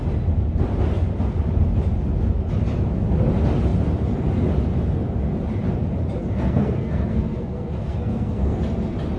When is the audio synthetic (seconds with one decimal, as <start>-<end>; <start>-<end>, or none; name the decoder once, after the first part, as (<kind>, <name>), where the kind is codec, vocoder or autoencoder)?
6.2-8.6 (codec, SNAC)